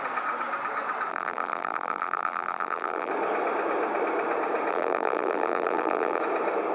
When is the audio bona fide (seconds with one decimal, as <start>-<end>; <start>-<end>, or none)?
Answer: 0.0-1.1; 3.1-4.7; 6.2-6.7